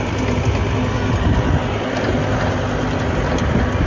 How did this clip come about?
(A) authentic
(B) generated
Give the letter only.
A